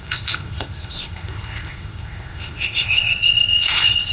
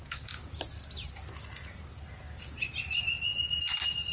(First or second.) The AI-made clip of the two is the first